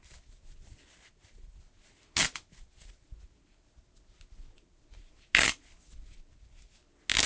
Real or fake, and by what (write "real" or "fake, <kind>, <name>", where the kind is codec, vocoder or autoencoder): real